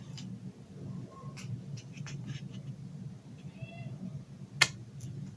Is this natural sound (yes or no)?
yes